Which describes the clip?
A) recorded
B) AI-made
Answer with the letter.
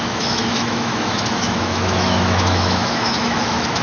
B